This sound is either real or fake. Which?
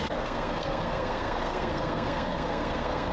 fake